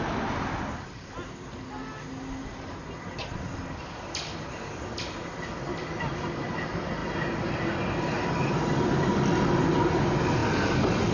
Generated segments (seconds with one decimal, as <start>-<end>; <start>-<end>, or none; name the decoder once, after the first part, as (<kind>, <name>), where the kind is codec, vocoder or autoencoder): none